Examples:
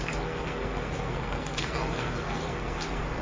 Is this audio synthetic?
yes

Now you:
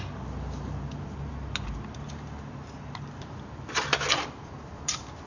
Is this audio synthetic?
no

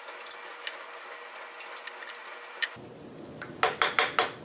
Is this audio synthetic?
no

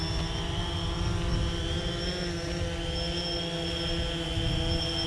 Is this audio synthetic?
no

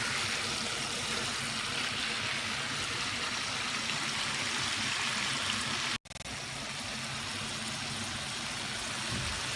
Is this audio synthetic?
no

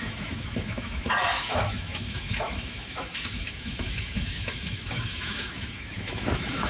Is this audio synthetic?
yes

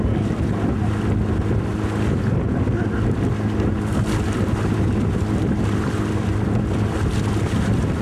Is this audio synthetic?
no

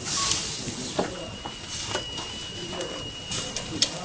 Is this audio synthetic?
yes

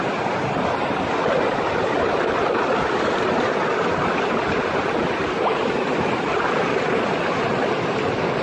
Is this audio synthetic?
no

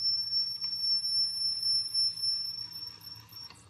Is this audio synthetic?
no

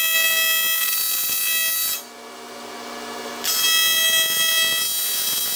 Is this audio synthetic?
no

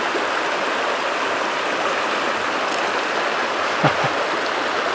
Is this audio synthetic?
no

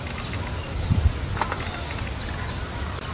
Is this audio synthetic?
no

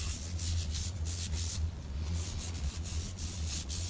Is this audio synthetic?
yes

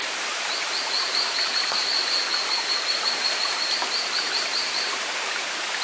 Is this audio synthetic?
yes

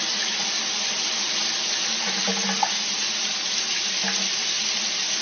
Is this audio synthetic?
no